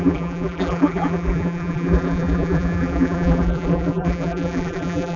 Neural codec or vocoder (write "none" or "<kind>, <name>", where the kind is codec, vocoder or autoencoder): vocoder, BigVGAN v2